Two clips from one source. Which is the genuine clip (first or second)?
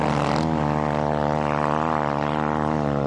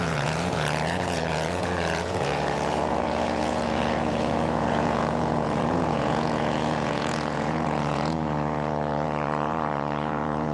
first